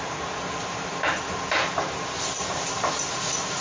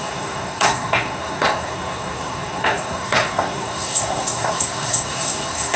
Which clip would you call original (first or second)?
first